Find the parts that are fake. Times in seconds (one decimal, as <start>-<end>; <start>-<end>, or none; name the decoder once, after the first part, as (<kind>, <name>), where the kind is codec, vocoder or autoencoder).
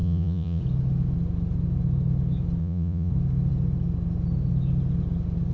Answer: 0.0-0.6 (vocoder, Vocos); 2.6-3.1